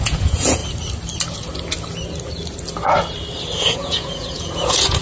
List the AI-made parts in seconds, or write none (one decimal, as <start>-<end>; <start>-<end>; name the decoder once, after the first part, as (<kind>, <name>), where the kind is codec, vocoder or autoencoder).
0.0-0.6 (vocoder, Vocos); 3.6-5.0